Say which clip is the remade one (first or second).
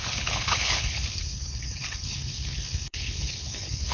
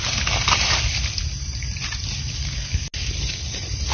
first